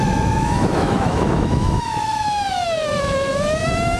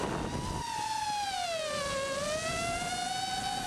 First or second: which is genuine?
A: second